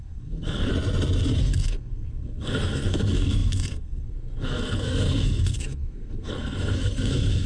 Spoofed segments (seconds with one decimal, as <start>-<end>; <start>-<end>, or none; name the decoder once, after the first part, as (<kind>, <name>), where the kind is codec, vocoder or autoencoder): 0.0-0.7 (codec, SNAC); 1.4-7.5